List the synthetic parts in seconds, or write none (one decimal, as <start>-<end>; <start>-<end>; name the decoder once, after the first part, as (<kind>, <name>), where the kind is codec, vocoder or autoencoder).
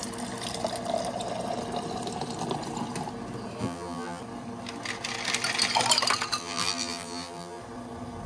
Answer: 3.6-4.2 (vocoder, BigVGAN v2); 6.4-7.6